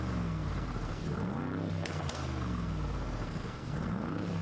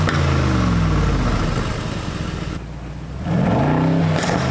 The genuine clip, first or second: second